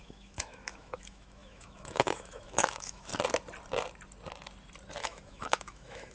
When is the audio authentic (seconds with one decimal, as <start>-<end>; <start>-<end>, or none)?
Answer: 3.1-5.0